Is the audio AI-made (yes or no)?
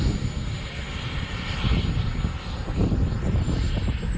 no